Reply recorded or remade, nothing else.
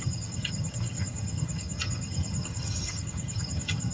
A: remade